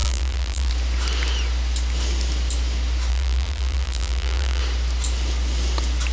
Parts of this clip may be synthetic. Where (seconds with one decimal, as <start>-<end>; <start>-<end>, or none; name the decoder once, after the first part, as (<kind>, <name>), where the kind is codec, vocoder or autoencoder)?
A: 0.0-0.7 (vocoder, BigVGAN v2); 3.1-4.6